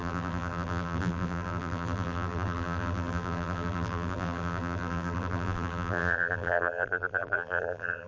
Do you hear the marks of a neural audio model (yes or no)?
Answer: yes